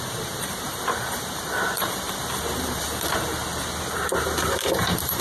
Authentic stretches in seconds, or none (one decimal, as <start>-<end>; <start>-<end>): 3.4-3.9